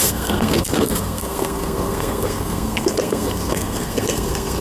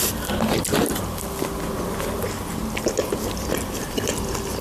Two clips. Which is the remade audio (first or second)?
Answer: first